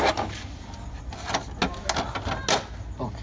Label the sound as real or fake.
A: real